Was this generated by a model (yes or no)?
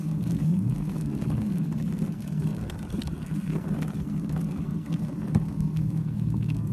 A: yes